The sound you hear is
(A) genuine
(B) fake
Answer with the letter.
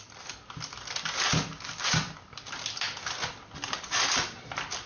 A